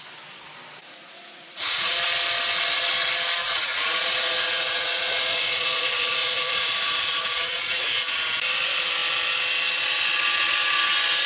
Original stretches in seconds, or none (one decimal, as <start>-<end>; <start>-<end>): 0.0-0.8; 1.9-3.4; 8.1-11.3